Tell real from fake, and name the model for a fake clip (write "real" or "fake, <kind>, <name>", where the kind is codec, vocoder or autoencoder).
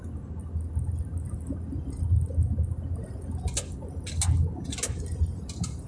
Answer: real